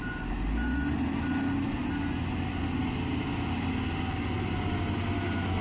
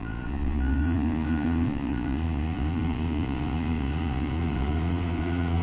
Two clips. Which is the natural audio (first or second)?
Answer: first